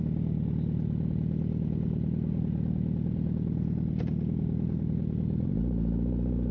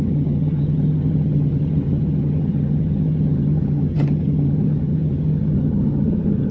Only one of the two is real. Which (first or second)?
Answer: first